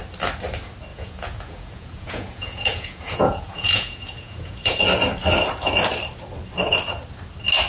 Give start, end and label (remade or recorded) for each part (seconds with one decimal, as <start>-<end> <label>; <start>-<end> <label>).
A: 0.0-0.9 recorded; 0.9-4.8 remade; 4.8-7.7 recorded